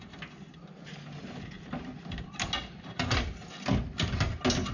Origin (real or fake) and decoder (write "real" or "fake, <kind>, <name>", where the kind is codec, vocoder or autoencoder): real